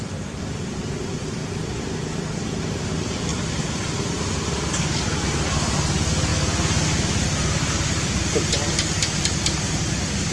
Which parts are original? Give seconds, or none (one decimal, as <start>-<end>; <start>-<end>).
0.0-10.3